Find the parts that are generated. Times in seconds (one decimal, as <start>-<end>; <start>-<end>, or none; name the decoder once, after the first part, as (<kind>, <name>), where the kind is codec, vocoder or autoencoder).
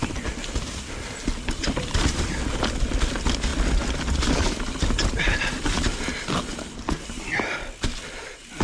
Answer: none